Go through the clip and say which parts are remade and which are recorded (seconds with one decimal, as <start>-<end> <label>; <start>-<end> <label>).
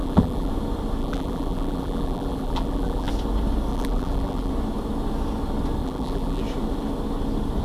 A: 0.0-0.5 remade; 0.5-1.0 recorded; 1.0-3.1 remade; 3.1-3.7 recorded; 3.7-4.5 remade; 4.5-5.8 recorded; 5.8-6.4 remade; 6.4-7.6 recorded